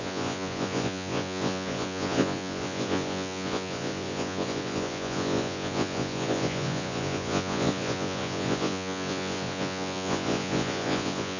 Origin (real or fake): fake